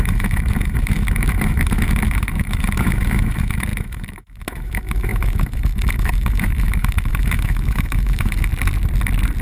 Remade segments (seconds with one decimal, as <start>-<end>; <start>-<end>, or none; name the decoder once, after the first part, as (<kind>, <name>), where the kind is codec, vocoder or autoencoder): 0.0-8.5 (autoencoder, DAC-VAE)